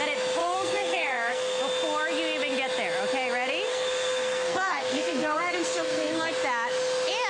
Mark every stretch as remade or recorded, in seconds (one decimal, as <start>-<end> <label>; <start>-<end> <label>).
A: 0.0-0.4 recorded; 0.4-1.6 remade; 1.6-3.7 recorded; 3.7-6.3 remade; 6.3-7.3 recorded